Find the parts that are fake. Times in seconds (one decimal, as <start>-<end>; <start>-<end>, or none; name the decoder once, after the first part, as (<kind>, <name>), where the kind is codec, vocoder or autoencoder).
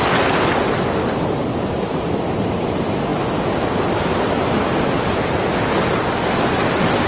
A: 1.5-2.0 (vocoder, BigVGAN v2)